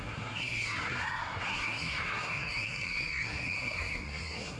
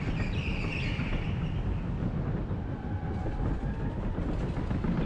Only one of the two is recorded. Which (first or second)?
second